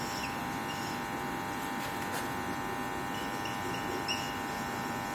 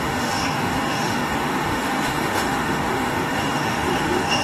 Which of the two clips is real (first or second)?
first